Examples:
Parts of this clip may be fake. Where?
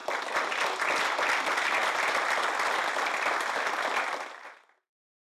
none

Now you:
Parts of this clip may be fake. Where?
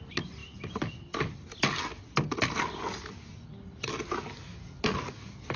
none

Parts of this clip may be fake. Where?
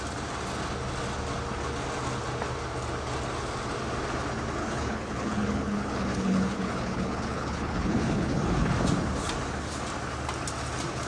4.6-8.7 (codec, HILCodec)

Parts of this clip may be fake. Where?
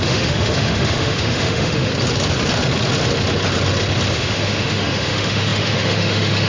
0.0-1.9 (autoencoder, DAC-VAE); 4.1-6.5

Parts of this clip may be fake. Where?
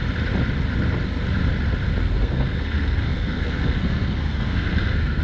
2.0-5.2 (codec, SNAC)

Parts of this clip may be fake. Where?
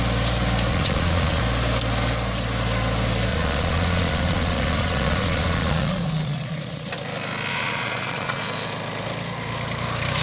0.7-1.4 (vocoder, Vocos); 3.3-6.9; 7.5-8.4